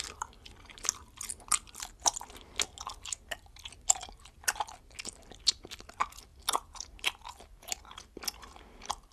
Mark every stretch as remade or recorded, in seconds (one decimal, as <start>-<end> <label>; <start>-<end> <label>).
0.0-9.1 recorded